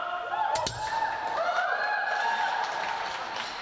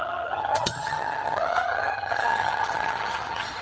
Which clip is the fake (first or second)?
second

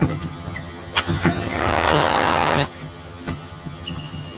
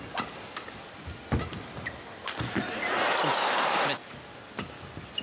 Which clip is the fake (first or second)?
first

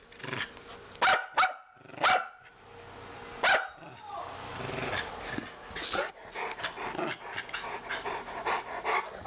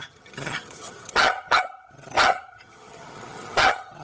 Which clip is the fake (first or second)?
second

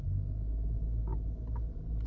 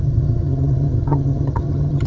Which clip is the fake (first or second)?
second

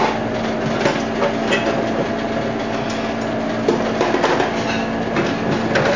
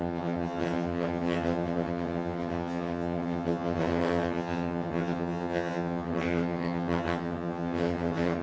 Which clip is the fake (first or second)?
second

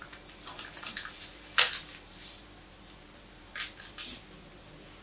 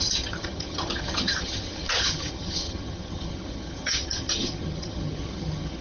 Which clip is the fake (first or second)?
second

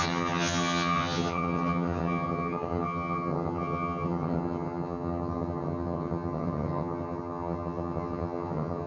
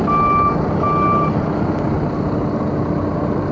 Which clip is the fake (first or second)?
first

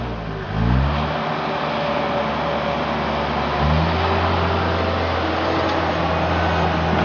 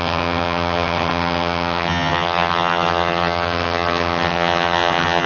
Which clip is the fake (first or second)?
second